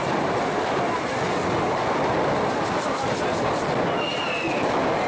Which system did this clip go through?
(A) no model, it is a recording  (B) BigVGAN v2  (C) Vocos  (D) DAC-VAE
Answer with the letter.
A